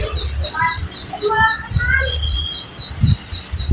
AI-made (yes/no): no